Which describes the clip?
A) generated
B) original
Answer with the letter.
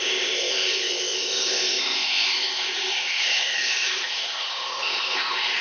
A